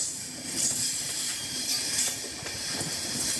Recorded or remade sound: remade